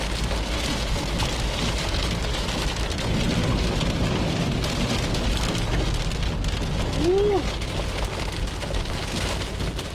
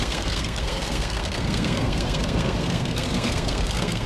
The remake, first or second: second